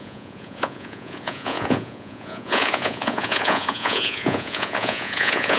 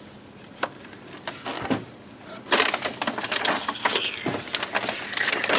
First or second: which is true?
second